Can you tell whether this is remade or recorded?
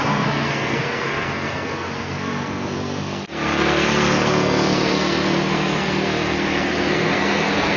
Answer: remade